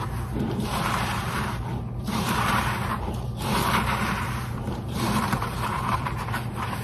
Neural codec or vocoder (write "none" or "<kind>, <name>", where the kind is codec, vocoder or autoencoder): vocoder, BigVGAN v2